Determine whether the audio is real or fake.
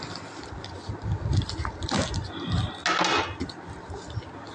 real